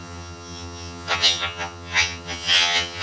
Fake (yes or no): yes